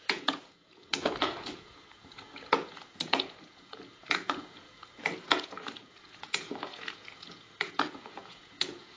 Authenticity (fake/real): fake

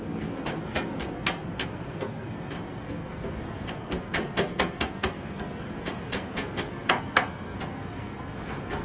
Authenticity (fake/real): fake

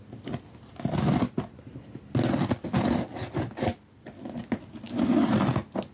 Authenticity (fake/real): real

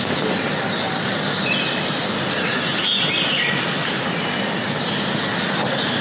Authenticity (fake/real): real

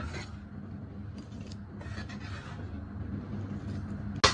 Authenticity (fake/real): real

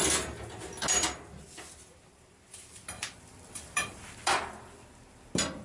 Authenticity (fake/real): real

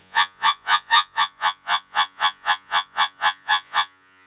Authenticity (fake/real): fake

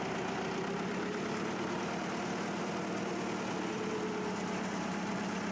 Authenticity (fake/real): real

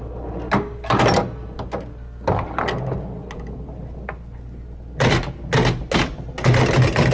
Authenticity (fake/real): real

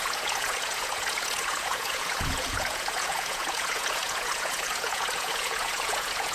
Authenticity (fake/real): fake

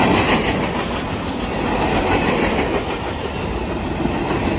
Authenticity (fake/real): real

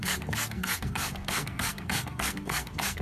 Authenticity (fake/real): fake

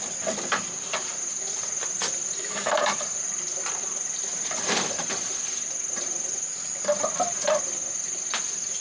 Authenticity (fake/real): real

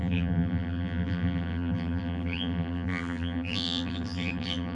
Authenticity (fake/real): fake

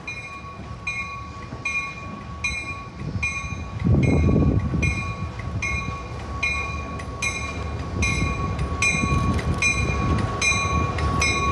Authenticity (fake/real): real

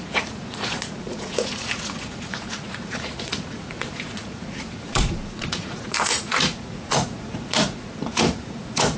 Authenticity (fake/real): fake